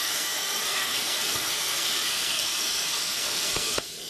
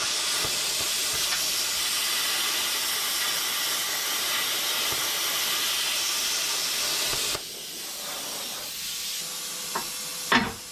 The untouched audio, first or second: second